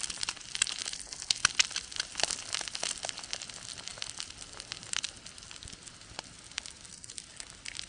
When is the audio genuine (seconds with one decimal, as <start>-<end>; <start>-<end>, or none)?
0.0-7.9